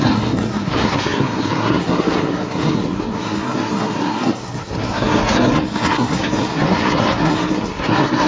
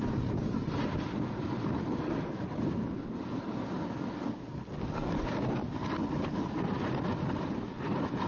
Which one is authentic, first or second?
second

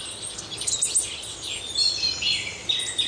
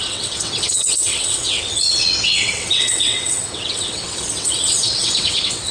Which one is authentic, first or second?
first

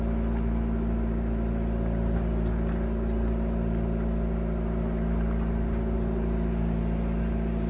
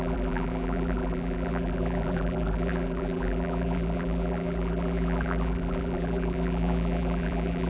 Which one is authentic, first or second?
first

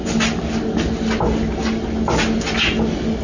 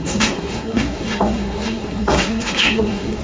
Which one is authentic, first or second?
first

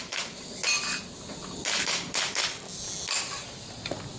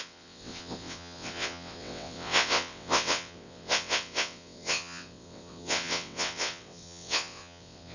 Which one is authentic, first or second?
first